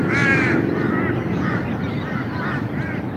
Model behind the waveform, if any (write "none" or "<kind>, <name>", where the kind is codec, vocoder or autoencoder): none